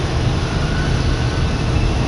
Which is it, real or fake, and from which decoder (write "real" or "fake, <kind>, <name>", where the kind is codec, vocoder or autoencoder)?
real